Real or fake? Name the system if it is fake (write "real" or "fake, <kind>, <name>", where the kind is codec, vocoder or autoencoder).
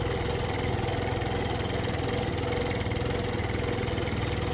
real